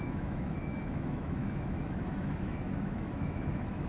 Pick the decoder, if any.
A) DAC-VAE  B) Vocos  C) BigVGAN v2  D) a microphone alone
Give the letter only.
A